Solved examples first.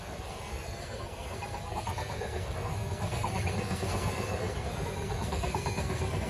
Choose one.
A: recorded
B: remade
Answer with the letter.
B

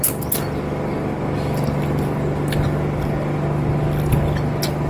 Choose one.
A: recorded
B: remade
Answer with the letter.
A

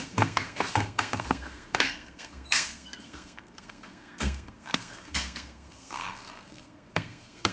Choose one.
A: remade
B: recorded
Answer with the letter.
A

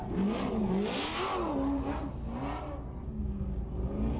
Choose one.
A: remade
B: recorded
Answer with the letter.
B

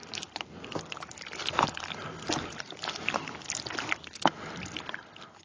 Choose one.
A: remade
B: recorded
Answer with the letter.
B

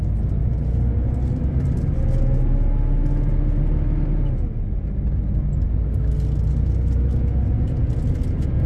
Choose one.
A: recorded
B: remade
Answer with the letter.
A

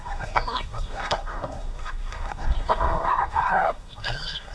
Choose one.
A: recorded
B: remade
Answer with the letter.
B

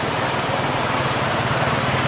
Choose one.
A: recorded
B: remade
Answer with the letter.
A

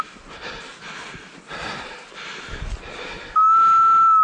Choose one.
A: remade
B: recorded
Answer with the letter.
B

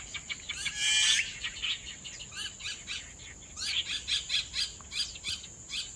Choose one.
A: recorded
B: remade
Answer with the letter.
A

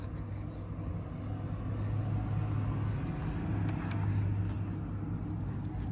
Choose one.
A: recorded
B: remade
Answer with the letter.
A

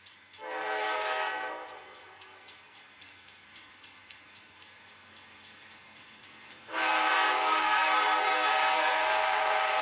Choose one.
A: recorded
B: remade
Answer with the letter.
B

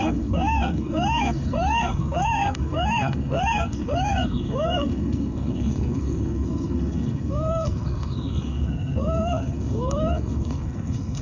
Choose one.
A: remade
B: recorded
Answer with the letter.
A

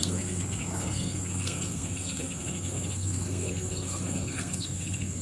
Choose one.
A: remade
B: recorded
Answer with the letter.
A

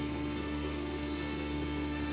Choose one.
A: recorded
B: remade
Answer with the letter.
B